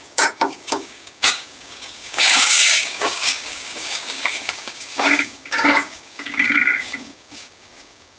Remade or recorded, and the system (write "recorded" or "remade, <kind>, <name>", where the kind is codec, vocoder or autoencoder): remade, codec, DAC